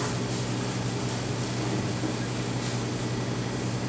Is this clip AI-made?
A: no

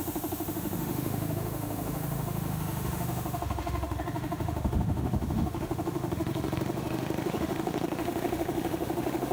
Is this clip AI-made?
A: yes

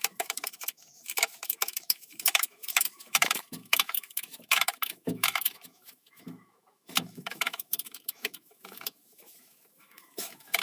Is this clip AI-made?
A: yes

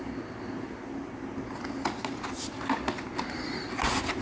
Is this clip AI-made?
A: no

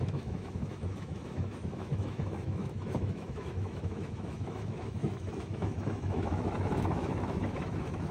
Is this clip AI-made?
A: yes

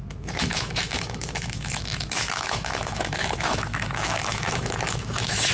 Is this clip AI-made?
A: yes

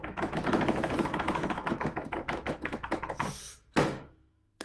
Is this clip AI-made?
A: yes